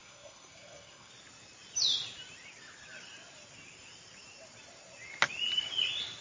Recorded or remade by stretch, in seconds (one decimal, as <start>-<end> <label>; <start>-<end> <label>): 0.0-1.1 remade; 1.1-6.2 recorded